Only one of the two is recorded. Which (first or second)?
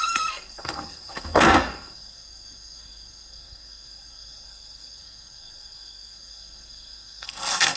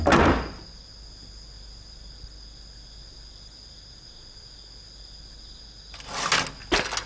second